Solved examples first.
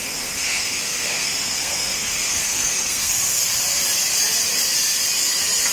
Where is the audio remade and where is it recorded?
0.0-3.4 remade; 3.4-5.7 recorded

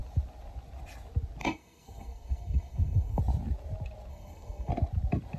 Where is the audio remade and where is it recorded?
0.0-1.4 recorded; 1.4-3.2 remade; 3.2-4.1 recorded; 4.1-4.7 remade; 4.7-5.4 recorded

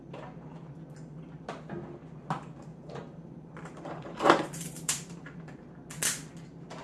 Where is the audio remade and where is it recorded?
0.0-2.7 recorded; 2.7-5.7 remade; 5.7-6.8 recorded

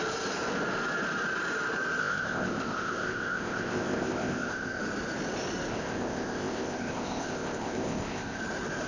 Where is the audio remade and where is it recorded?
0.0-2.0 recorded; 2.0-4.8 remade; 4.8-5.7 recorded; 5.7-8.4 remade; 8.4-8.9 recorded